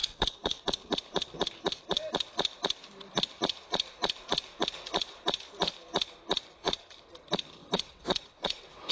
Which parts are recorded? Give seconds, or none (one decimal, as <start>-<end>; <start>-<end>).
0.6-7.6